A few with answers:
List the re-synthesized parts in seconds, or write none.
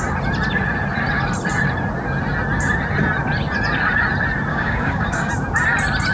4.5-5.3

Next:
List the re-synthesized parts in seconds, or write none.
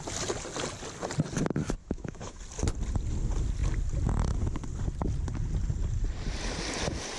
1.8-2.4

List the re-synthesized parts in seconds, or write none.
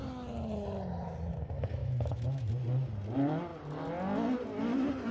1.8-2.5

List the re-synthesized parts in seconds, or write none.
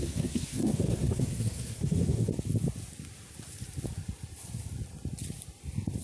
0.0-2.3